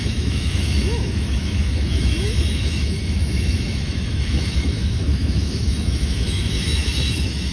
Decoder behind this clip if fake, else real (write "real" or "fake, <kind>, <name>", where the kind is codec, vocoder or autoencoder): fake, autoencoder, DAC-VAE